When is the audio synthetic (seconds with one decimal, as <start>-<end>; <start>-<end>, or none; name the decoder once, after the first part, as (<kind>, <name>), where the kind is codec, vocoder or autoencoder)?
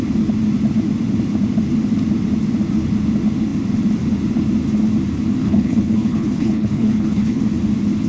5.4-7.4 (codec, HILCodec)